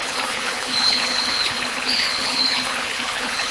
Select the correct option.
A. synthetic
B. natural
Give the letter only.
A